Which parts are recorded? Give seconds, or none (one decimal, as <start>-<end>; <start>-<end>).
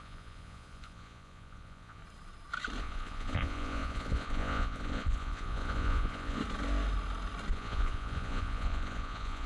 2.0-2.8; 6.4-7.5